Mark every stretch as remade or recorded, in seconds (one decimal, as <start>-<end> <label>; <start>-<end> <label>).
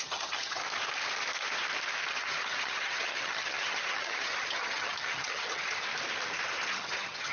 0.0-0.6 remade; 0.6-2.1 recorded; 2.1-5.9 remade; 5.9-6.7 recorded; 6.7-7.3 remade